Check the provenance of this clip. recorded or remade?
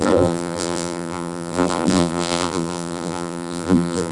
remade